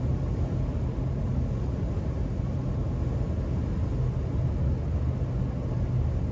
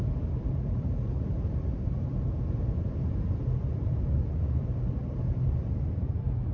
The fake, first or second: second